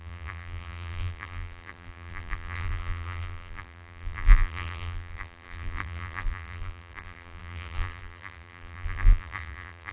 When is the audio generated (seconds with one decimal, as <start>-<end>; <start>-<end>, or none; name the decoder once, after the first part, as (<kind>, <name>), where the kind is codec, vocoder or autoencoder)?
0.0-9.9 (vocoder, BigVGAN v2)